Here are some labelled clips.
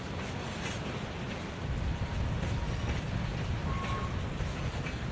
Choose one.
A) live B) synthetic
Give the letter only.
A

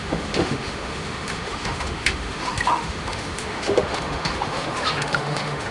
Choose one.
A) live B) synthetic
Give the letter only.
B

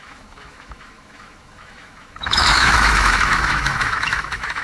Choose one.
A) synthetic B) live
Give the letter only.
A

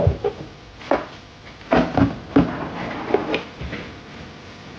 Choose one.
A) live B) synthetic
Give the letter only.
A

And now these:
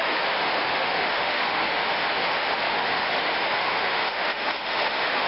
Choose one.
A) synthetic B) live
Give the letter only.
A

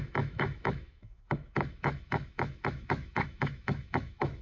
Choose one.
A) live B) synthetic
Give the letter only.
B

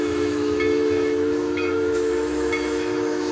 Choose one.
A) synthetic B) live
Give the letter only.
A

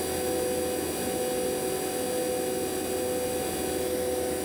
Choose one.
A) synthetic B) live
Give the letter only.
B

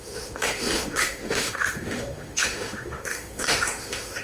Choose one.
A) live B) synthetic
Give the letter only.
B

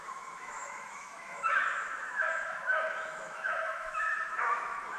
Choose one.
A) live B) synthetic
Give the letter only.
B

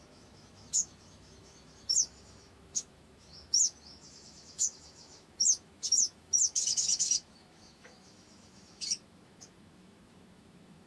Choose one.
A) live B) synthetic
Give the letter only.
B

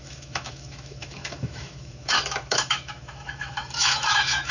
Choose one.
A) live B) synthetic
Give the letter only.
B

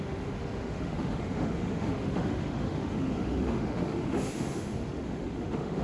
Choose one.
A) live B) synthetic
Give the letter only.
B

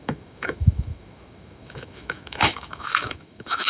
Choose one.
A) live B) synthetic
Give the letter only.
B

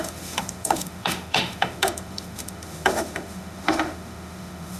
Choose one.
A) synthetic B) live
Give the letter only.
A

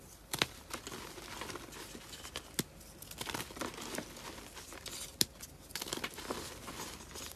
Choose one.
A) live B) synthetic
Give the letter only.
A